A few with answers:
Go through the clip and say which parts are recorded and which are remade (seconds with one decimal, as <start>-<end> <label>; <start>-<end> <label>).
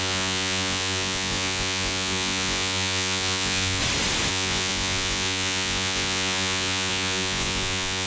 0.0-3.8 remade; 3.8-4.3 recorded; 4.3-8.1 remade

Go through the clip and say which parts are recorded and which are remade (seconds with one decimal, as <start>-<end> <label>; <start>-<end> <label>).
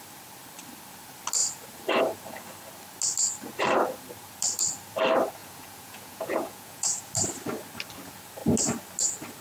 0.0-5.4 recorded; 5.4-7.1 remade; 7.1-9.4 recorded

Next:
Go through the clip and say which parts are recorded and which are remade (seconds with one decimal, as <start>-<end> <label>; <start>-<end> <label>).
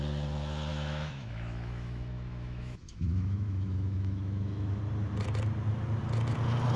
0.0-0.7 recorded; 0.7-4.8 remade; 4.8-6.8 recorded